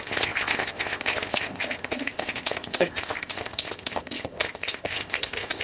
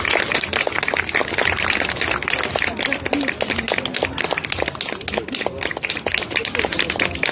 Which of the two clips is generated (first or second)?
first